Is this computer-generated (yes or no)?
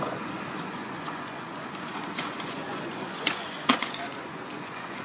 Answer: yes